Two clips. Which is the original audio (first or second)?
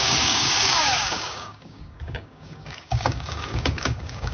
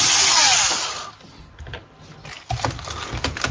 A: second